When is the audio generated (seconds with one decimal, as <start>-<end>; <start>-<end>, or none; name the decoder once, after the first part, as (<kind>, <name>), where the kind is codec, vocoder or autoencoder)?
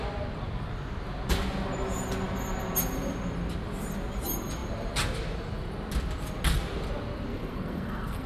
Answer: 7.3-8.3 (codec, SNAC)